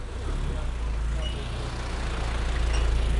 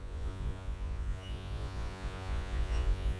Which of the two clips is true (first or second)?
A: first